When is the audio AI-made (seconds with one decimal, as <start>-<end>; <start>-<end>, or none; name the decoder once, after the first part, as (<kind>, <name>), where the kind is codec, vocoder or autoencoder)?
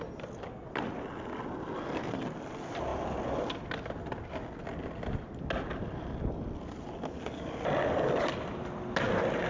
none